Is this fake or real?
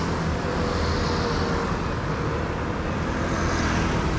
real